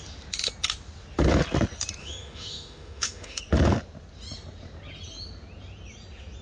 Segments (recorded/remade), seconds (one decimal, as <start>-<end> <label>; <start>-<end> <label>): 0.0-2.0 recorded; 2.0-3.4 remade; 3.4-6.4 recorded

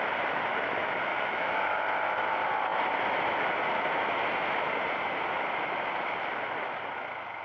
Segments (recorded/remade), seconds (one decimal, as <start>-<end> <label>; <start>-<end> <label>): 0.0-1.1 recorded; 1.1-1.8 remade; 1.8-7.4 recorded

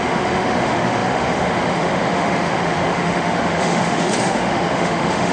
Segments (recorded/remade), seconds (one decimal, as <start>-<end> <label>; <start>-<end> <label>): 0.0-5.3 remade

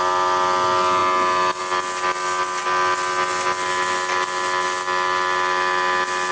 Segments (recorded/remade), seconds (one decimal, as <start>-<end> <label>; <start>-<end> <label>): 0.0-6.3 recorded